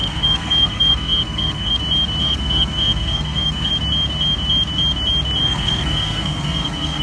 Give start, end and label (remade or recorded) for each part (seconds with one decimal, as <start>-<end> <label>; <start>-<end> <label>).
0.0-1.7 remade; 1.7-2.2 recorded; 2.2-3.7 remade; 3.7-5.4 recorded; 5.4-7.0 remade